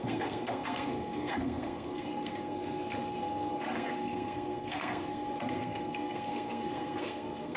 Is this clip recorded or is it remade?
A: remade